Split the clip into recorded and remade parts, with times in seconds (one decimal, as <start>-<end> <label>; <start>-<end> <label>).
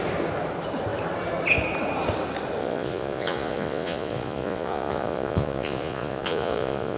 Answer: 0.0-2.6 recorded; 2.6-7.0 remade